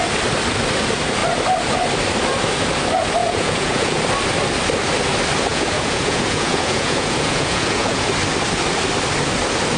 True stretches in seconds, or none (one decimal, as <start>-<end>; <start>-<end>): 0.0-3.2; 4.0-5.5; 8.1-9.8